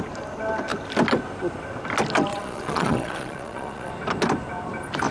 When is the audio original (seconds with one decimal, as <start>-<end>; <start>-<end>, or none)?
0.0-2.3; 3.9-5.1